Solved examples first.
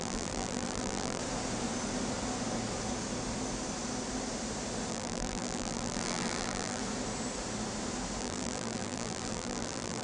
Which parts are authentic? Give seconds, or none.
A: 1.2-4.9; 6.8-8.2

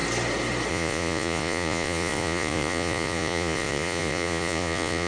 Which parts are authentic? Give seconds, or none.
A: 0.0-0.7